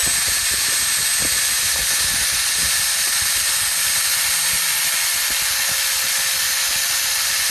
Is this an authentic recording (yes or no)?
yes